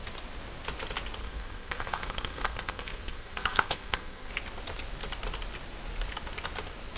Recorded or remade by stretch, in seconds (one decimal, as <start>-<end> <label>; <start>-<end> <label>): 0.0-1.2 recorded; 1.2-4.3 remade; 4.3-7.0 recorded